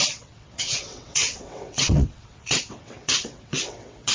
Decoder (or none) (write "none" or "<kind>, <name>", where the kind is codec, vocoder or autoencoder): vocoder, WaveNeXt